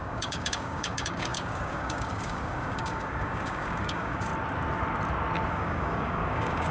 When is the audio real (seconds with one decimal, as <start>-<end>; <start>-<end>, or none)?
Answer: 4.3-5.5